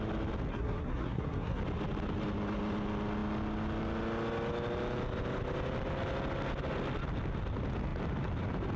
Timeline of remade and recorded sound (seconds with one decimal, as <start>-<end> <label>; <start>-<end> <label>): 0.0-0.5 recorded; 0.5-1.6 remade; 1.6-8.8 recorded